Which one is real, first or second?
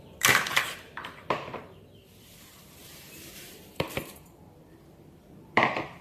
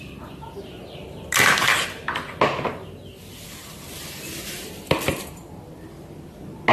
second